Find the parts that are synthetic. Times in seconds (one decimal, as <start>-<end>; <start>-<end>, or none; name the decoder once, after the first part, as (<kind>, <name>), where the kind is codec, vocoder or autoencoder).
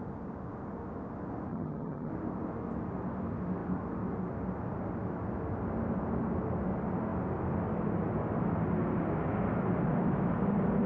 1.5-2.1 (vocoder, HiFi-GAN)